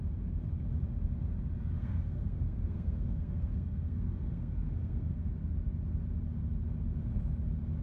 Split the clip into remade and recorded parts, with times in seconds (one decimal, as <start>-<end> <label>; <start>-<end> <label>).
0.0-1.8 recorded; 1.8-5.3 remade; 5.3-7.8 recorded